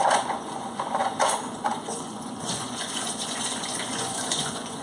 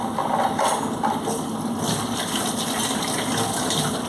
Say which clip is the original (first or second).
second